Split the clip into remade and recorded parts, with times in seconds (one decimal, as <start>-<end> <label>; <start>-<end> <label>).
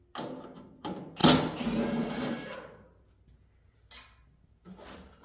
0.0-5.2 recorded